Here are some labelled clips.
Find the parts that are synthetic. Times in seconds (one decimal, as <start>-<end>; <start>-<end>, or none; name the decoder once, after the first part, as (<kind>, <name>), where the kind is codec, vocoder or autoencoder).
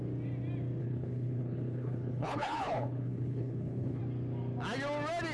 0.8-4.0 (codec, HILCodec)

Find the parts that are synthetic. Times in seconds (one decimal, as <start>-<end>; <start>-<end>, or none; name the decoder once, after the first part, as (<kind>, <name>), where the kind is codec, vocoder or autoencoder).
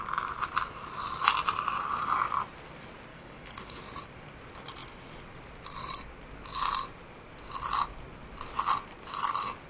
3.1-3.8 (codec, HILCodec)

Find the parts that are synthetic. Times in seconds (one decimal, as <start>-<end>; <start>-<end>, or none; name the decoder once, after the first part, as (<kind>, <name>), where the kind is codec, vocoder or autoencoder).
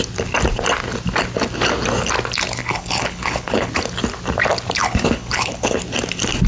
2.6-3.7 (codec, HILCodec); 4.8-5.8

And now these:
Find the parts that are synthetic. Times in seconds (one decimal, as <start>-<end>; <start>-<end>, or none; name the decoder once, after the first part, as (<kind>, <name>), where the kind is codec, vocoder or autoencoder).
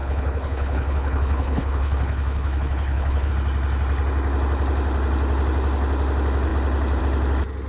0.0-3.3 (codec, HILCodec)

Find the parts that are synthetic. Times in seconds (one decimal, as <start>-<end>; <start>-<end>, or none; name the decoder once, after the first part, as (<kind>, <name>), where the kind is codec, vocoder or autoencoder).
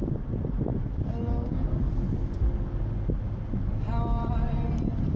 none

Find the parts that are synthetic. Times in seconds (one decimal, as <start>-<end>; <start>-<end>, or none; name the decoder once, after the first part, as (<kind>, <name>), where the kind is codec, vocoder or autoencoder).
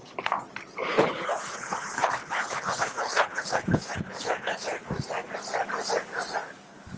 0.9-4.8 (codec, HILCodec)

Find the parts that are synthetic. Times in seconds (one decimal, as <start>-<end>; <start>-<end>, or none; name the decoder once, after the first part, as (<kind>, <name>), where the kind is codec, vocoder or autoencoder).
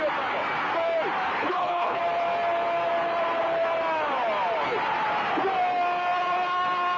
1.4-2.0 (codec, HILCodec)